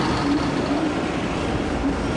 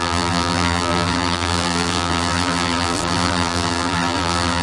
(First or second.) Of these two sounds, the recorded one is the first